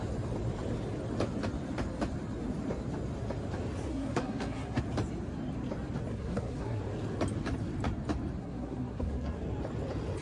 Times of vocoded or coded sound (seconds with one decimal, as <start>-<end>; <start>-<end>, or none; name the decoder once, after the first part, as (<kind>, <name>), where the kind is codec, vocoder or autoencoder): 3.9-4.8 (codec, SNAC); 6.1-6.8; 8.4-9.4